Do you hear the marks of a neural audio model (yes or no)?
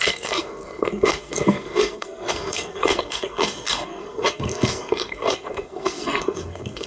yes